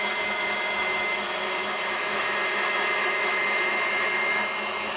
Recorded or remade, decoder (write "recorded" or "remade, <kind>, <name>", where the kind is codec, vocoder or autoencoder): remade, autoencoder, DAC-VAE